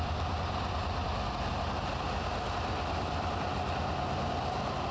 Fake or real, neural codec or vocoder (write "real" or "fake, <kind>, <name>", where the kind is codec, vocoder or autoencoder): real